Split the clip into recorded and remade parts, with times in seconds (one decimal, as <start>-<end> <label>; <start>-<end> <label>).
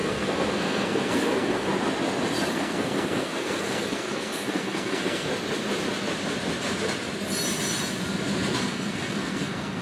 0.0-1.7 remade; 1.7-2.5 recorded; 2.5-5.3 remade; 5.3-8.6 recorded; 8.6-9.8 remade